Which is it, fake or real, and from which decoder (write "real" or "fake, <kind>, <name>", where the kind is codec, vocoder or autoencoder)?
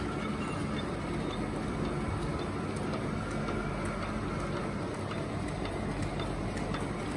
real